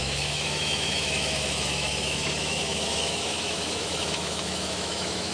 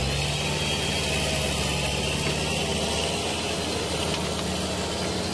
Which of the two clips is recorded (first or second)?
second